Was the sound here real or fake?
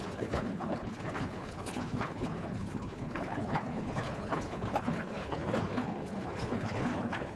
fake